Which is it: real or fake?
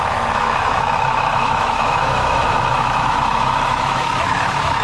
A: fake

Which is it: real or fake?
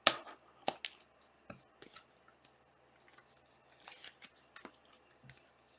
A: real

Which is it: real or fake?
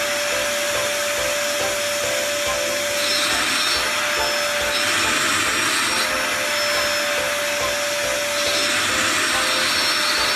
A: real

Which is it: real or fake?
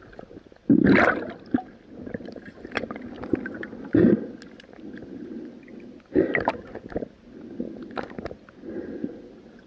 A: real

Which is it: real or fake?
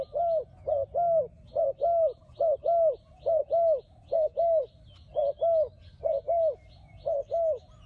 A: real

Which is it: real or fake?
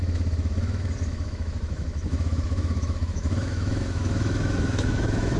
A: fake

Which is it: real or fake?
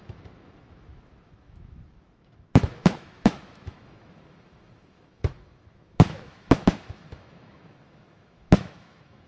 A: fake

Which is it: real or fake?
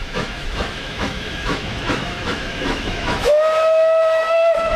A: fake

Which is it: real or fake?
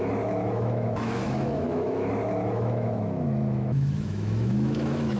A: fake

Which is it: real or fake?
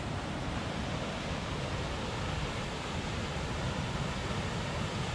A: real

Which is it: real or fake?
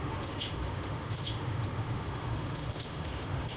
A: fake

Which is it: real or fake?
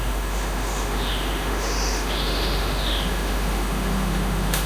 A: fake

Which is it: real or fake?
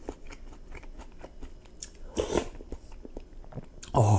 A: real